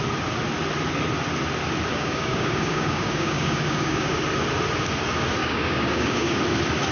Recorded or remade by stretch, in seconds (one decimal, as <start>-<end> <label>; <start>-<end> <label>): 0.0-1.9 recorded; 1.9-4.2 remade; 4.2-5.4 recorded; 5.4-6.4 remade; 6.4-6.9 recorded